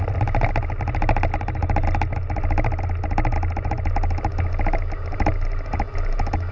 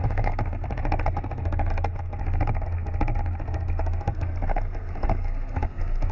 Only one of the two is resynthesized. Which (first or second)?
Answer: second